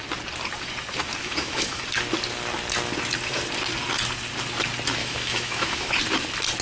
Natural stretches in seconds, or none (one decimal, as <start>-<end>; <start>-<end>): 0.0-1.2; 1.8-5.0; 6.0-6.6